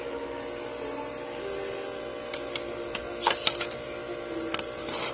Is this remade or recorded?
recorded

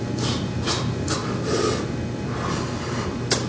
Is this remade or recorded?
recorded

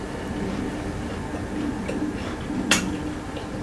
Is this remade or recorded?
recorded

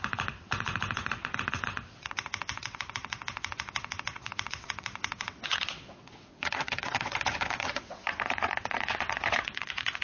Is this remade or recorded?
remade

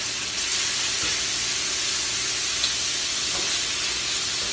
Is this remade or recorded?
recorded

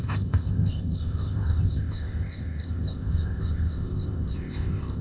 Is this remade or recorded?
remade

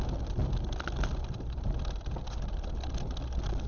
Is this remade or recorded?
recorded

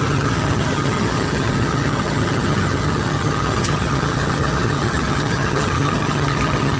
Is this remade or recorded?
remade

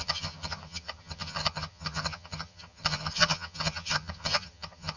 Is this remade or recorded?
remade